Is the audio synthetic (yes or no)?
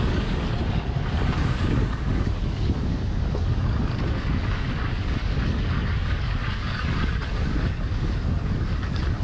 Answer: yes